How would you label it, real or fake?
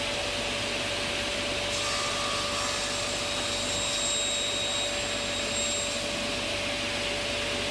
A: real